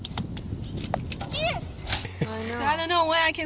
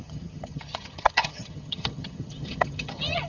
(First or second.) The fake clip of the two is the second